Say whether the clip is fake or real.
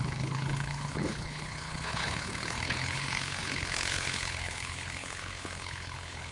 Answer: fake